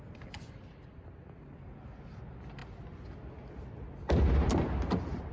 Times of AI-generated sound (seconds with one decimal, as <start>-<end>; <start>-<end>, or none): none